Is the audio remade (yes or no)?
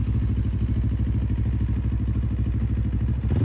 no